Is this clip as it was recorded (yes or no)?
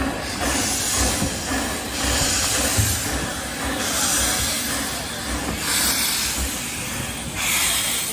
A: yes